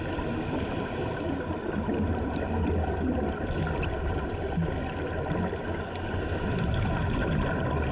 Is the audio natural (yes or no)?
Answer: yes